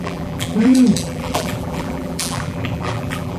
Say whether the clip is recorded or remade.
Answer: remade